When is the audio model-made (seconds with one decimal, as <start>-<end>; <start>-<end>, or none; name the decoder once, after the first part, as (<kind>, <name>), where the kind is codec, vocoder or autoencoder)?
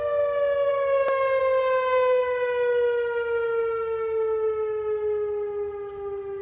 none